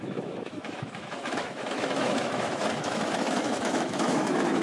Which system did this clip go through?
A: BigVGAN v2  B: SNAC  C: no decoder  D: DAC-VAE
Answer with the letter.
D